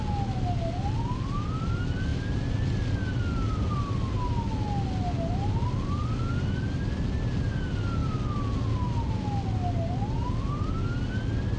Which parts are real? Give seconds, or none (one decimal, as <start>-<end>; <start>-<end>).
0.0-11.6